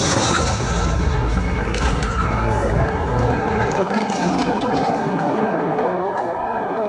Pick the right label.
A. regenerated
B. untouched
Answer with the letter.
A